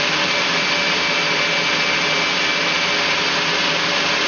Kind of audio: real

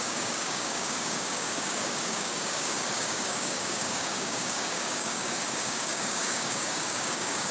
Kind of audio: fake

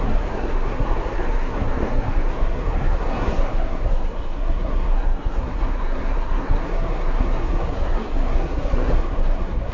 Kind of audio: fake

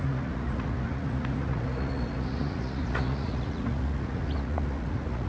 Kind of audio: fake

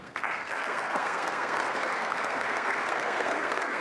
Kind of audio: fake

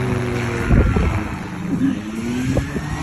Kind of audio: real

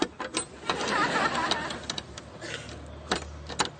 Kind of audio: real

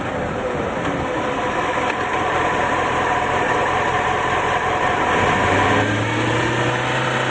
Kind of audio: real